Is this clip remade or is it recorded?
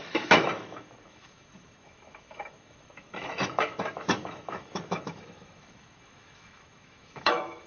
remade